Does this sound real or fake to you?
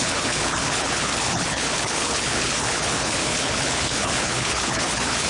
fake